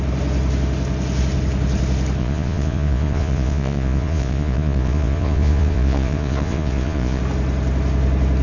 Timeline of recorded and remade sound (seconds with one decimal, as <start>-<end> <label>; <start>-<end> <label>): 0.0-2.2 recorded; 2.2-7.2 remade; 7.2-8.4 recorded